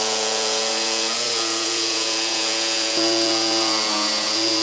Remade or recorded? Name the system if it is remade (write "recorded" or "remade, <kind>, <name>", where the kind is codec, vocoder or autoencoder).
remade, vocoder, Vocos